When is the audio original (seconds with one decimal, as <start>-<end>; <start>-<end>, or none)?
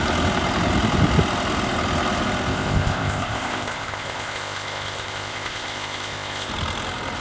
0.0-2.5; 6.5-7.2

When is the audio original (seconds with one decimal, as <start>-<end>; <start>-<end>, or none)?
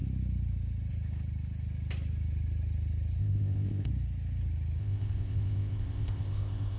0.0-3.2; 3.9-4.8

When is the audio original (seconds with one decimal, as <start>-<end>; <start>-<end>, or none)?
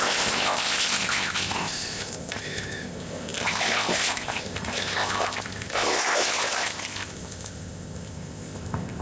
none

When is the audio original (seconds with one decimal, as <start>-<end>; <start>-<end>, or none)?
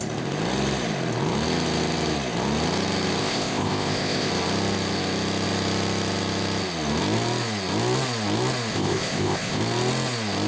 0.0-3.2; 4.3-8.7; 9.6-10.5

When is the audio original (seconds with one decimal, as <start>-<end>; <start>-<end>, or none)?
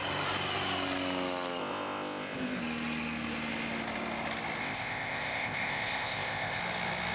0.0-1.6; 2.6-4.6; 6.6-7.1